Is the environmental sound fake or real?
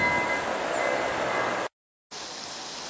real